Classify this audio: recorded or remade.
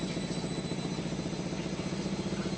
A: recorded